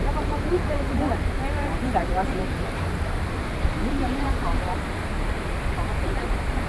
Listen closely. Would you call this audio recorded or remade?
remade